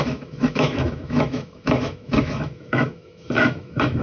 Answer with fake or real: fake